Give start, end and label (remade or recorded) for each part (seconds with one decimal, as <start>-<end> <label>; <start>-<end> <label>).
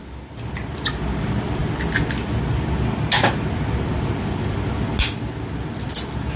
0.0-6.4 recorded